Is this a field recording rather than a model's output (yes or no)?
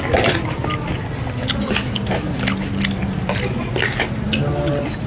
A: yes